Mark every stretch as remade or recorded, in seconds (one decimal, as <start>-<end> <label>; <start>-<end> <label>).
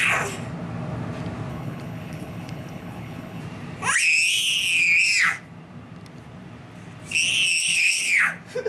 0.0-1.5 recorded; 1.5-3.4 remade; 3.4-7.6 recorded; 7.6-8.2 remade; 8.2-8.7 recorded